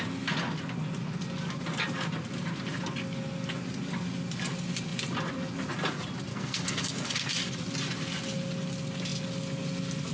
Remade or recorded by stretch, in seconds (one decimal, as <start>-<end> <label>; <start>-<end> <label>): 0.0-6.3 recorded; 6.3-7.3 remade; 7.3-10.1 recorded